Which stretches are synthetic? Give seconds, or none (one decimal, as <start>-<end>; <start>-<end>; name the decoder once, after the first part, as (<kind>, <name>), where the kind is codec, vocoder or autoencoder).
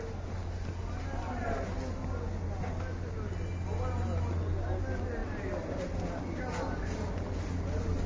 none